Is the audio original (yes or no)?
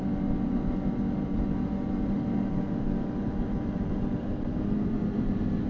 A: no